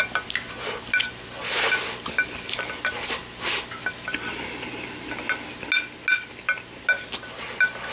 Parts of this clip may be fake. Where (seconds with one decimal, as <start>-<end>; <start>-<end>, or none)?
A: none